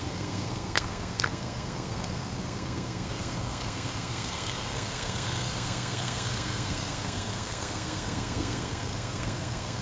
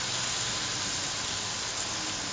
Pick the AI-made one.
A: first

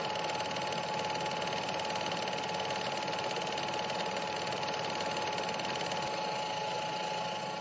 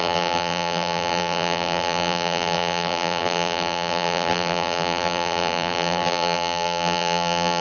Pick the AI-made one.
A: second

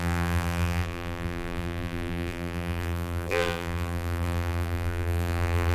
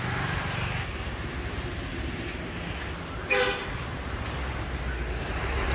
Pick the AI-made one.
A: first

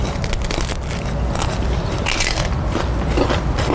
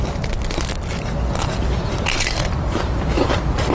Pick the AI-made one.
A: second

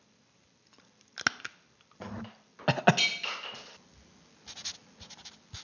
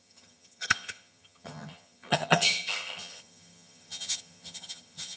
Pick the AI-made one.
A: second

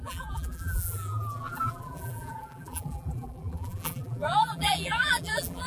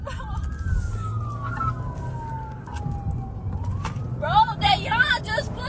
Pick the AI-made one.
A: first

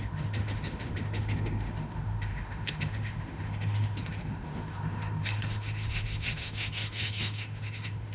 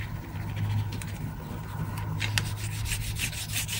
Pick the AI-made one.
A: first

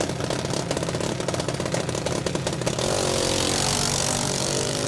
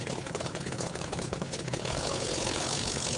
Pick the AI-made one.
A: second